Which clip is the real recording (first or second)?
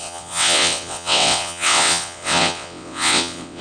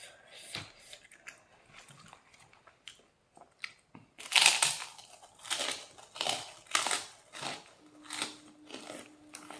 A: second